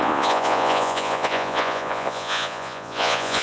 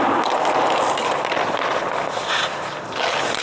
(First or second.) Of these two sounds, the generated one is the first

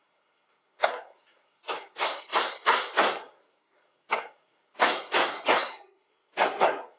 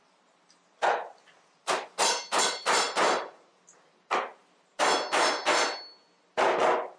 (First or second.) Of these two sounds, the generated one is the first